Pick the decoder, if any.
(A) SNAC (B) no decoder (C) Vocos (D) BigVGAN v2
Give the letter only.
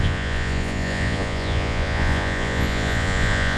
C